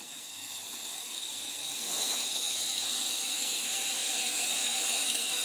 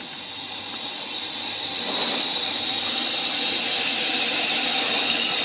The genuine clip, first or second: second